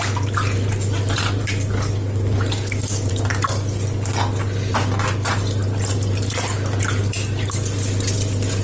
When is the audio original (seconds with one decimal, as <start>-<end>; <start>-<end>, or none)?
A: 0.0-1.4; 3.1-8.6